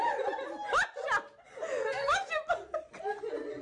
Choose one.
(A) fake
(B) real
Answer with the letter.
B